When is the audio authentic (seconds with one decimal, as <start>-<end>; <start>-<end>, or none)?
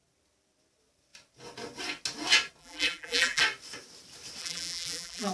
0.0-2.6; 3.4-4.4